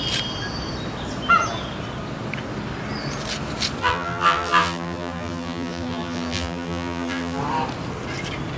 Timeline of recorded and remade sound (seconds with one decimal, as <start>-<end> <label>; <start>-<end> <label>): 0.0-3.8 recorded; 3.8-7.4 remade; 7.4-8.6 recorded